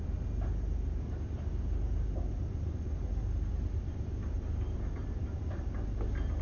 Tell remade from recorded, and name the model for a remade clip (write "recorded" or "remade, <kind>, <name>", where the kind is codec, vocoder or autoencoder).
recorded